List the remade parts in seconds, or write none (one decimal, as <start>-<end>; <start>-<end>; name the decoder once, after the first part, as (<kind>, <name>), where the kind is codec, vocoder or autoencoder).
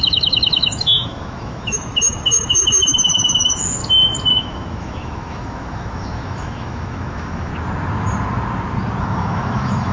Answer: 0.0-3.8 (autoencoder, DAC-VAE); 4.3-7.5; 9.0-9.9